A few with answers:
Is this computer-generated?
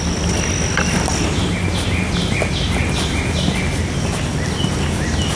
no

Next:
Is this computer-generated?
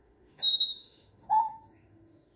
yes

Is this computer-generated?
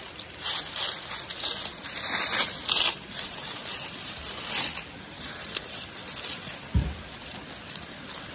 yes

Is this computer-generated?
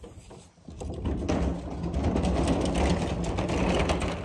no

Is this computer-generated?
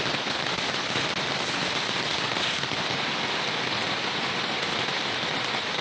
no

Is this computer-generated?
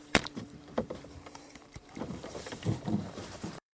yes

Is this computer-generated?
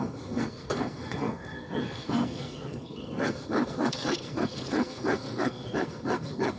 yes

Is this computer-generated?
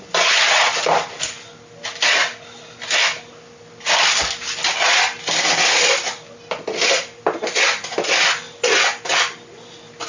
no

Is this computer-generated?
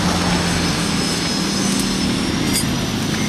no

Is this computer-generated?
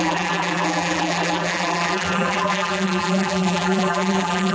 yes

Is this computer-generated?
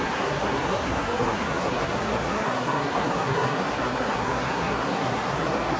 yes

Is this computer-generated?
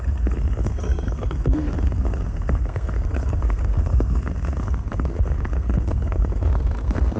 yes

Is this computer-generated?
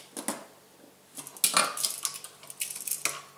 no